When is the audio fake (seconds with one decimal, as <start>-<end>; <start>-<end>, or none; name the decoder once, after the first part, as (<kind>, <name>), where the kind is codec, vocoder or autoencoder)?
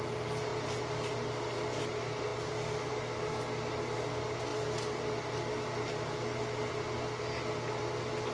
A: none